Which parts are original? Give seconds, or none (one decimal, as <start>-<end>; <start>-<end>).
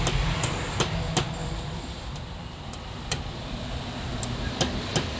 0.0-1.4; 4.5-5.2